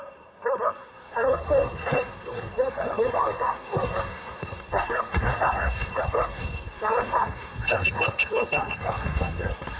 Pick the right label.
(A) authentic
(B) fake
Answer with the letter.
B